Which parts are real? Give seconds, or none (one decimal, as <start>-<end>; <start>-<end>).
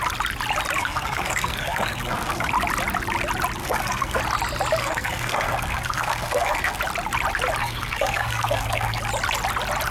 0.0-0.8; 2.5-3.6; 4.2-4.8; 6.8-7.6; 9.0-9.9